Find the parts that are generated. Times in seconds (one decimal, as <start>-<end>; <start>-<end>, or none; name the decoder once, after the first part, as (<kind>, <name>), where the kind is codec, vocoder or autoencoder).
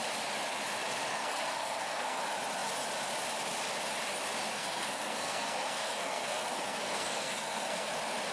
1.1-2.2 (codec, SNAC); 4.5-7.9